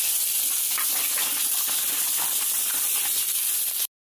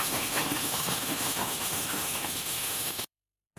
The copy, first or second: second